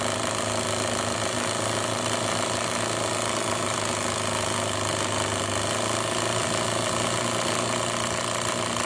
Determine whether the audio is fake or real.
real